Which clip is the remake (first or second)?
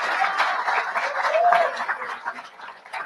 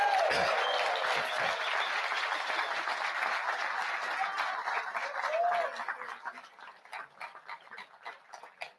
first